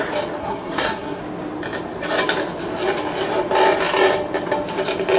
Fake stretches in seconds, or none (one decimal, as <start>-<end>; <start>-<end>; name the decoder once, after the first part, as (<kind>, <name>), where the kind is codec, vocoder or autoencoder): 0.4-1.2 (codec, SNAC)